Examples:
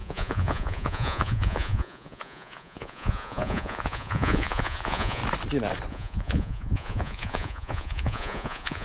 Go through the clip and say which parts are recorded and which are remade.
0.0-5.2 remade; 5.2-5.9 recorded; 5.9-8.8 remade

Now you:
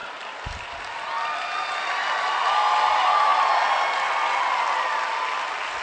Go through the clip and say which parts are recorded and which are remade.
0.0-5.8 recorded

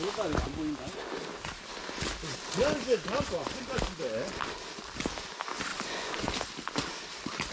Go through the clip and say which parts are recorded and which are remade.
0.0-5.7 recorded; 5.7-6.3 remade; 6.3-7.5 recorded

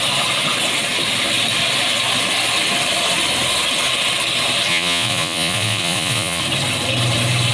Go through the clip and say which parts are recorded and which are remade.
0.0-4.7 recorded; 4.7-6.4 remade; 6.4-7.5 recorded

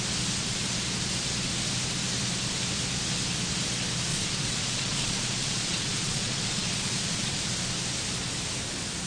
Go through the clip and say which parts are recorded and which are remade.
0.0-4.1 recorded; 4.1-7.4 remade; 7.4-9.1 recorded

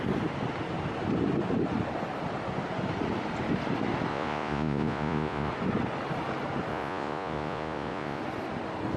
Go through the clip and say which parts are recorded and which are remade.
0.0-4.1 recorded; 4.1-5.5 remade; 5.5-6.7 recorded; 6.7-8.2 remade; 8.2-9.0 recorded